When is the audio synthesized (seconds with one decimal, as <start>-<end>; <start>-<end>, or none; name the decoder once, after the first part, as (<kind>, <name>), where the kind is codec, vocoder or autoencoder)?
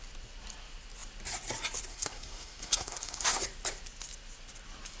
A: 1.9-3.4 (codec, SNAC)